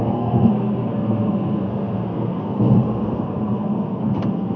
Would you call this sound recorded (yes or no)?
no